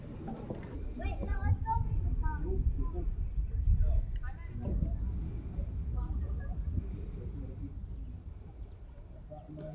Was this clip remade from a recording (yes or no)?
no